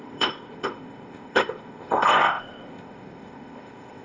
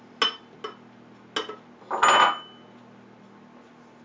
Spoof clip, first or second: first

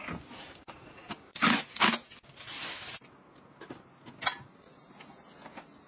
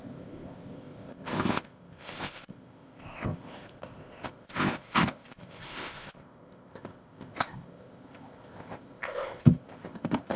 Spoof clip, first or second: second